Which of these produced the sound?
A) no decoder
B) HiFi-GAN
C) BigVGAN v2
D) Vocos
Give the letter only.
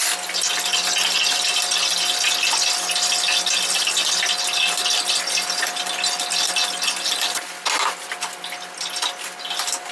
A